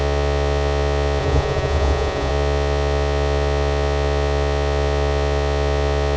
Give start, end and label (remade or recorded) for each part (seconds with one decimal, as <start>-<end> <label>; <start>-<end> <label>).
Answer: 0.0-1.2 recorded; 1.2-2.3 remade; 2.3-6.2 recorded